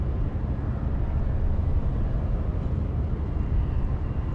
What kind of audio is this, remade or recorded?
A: recorded